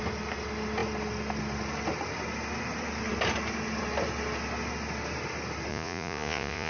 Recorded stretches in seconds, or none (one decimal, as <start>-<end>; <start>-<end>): 0.0-5.7